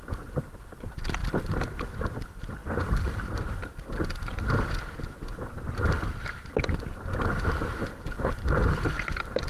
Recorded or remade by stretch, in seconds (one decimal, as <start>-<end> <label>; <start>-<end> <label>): 0.0-1.2 remade; 1.2-2.0 recorded; 2.0-2.6 remade; 2.6-7.8 recorded; 7.8-9.5 remade